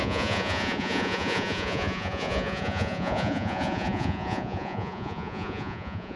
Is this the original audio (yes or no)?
no